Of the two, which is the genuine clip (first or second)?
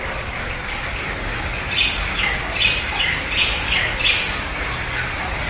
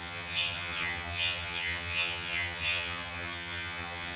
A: first